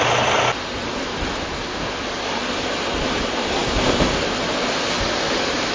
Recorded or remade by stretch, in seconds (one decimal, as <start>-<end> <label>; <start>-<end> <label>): 0.0-5.7 recorded